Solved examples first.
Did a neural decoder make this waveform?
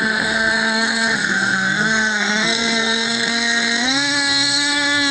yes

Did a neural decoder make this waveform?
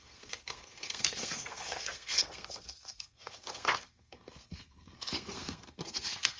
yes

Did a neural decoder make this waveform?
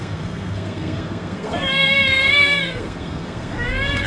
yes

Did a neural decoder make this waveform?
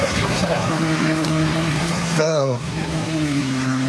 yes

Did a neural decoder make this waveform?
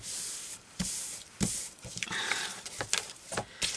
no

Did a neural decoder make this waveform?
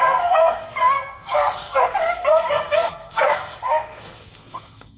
yes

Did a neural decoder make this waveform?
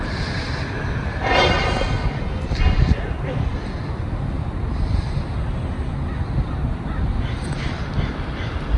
no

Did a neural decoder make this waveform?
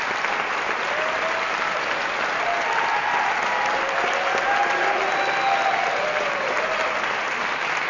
no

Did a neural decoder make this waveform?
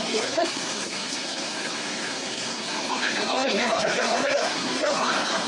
yes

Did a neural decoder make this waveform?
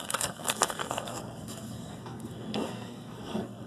yes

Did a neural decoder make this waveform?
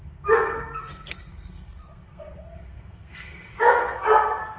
yes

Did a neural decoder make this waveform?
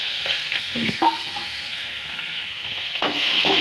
yes